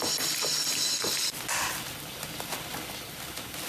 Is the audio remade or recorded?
recorded